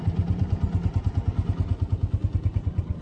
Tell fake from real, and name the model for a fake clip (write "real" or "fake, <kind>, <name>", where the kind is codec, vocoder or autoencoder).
real